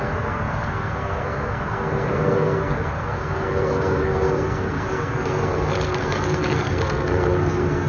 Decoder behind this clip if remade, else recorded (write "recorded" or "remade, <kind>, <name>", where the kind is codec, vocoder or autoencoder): remade, codec, SNAC